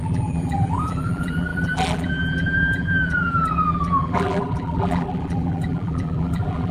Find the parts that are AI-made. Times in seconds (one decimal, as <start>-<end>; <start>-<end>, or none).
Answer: 0.0-6.7